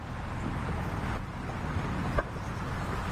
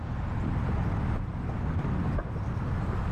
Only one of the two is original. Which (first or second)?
first